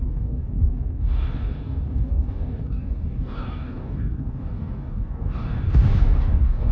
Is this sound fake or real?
fake